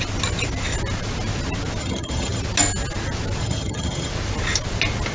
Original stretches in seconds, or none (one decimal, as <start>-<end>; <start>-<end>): 0.0-1.8; 2.4-3.4; 4.1-5.1